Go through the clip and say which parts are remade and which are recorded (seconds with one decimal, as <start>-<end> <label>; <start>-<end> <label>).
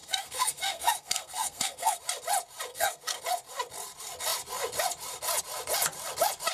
0.0-2.0 remade; 2.0-2.7 recorded; 2.7-3.2 remade; 3.2-6.5 recorded